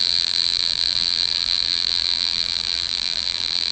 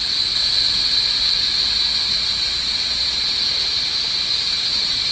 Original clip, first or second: second